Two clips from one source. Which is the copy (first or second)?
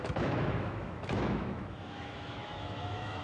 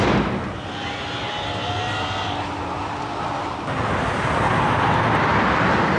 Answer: first